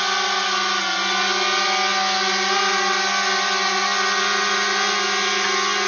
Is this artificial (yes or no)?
no